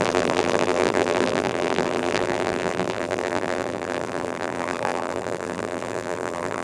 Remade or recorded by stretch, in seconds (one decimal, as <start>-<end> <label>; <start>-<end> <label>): 0.0-6.6 remade

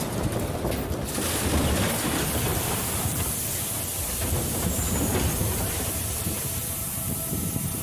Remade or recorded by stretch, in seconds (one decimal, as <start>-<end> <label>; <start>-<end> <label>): 0.0-2.5 recorded; 2.5-7.2 remade; 7.2-7.8 recorded

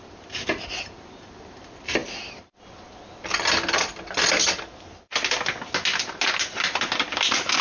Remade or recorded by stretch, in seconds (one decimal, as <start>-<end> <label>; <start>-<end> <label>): 0.0-7.6 recorded

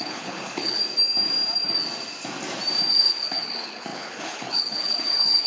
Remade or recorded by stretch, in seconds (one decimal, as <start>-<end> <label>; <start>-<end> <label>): 0.0-0.8 remade; 0.8-2.9 recorded; 2.9-5.5 remade

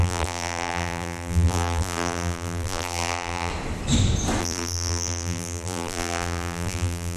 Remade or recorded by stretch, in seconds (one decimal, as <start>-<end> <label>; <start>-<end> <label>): 0.0-3.5 remade; 3.5-4.4 recorded; 4.4-7.2 remade

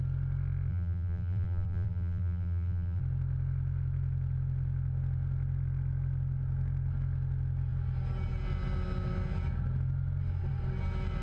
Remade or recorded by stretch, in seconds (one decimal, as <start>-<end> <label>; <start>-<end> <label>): 0.0-0.7 recorded; 0.7-3.0 remade; 3.0-11.2 recorded